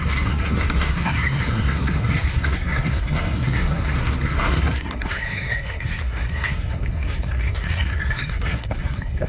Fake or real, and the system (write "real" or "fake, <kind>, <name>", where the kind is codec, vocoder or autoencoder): fake, codec, SNAC